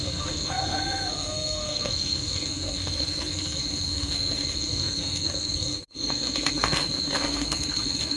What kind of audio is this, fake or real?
fake